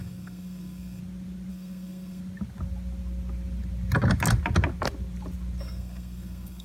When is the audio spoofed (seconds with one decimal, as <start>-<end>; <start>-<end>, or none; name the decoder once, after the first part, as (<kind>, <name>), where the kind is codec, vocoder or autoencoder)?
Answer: 0.0-1.0 (codec, SNAC); 1.5-2.2; 5.6-6.6